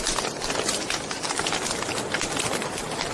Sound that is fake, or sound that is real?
fake